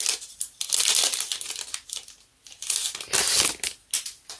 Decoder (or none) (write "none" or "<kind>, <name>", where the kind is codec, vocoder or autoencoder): none